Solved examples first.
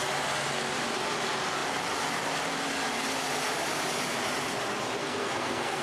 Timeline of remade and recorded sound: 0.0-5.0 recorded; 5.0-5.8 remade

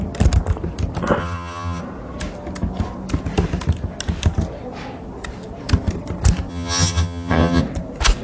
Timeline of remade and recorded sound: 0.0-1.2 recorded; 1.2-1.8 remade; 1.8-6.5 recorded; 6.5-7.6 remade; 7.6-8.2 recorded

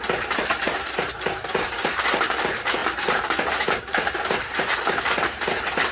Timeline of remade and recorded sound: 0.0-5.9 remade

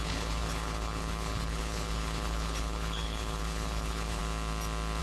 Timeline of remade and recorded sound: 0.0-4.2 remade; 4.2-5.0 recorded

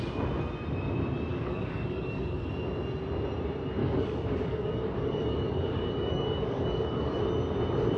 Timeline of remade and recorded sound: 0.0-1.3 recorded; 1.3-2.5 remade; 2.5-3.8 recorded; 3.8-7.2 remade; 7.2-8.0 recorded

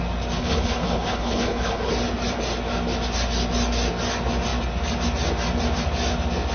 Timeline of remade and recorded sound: 0.0-0.4 recorded; 0.4-1.9 remade; 1.9-6.5 recorded